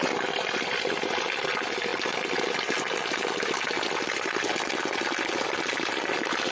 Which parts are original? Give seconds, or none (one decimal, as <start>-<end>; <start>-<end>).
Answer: 0.0-6.5